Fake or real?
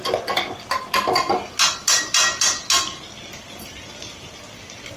real